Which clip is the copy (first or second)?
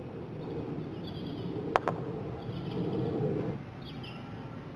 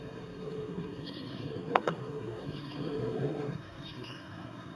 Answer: second